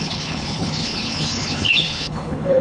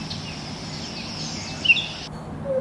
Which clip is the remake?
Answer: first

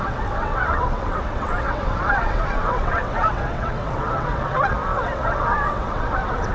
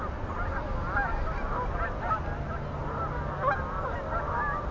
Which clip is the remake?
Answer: first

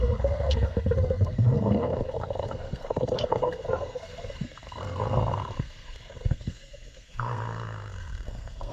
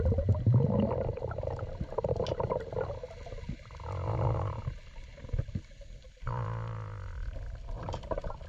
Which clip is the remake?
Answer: first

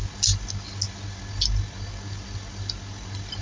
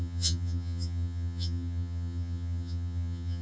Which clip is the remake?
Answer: second